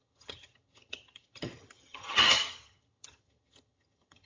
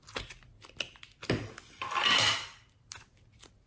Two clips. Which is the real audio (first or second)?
second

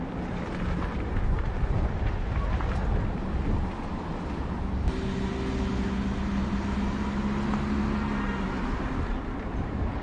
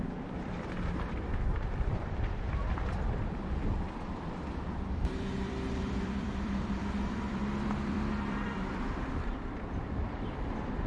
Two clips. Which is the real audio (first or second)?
first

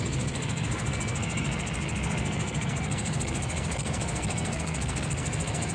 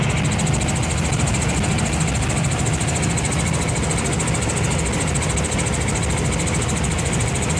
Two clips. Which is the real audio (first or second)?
second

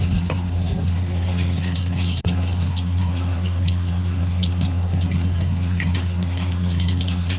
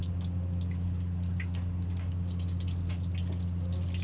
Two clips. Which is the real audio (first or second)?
second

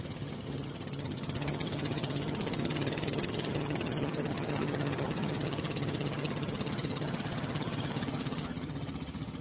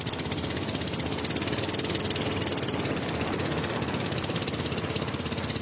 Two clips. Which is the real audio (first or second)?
second